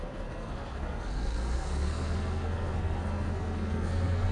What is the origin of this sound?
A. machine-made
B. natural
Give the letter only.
A